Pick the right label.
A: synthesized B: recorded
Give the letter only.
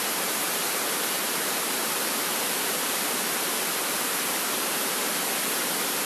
A